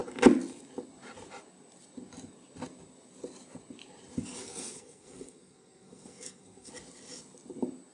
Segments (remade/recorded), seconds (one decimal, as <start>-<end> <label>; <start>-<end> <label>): 0.0-4.4 recorded; 4.4-6.7 remade; 6.7-7.9 recorded